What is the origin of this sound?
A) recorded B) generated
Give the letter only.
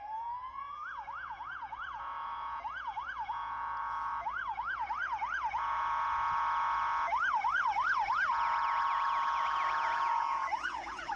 B